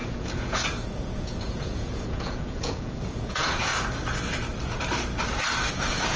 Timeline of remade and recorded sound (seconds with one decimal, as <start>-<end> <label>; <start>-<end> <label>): 0.0-3.7 remade; 3.7-5.7 recorded; 5.7-6.2 remade